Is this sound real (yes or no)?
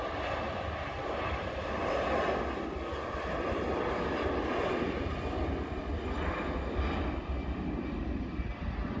yes